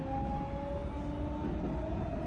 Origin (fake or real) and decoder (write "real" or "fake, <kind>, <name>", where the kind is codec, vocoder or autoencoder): real